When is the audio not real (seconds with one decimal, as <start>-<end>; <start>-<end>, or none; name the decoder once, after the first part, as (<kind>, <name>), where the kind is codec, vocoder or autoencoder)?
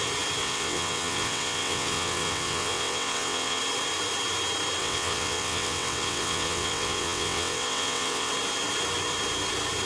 0.4-3.6 (vocoder, WaveNeXt); 4.8-8.3